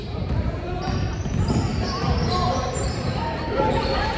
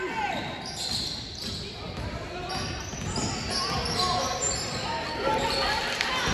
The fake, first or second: first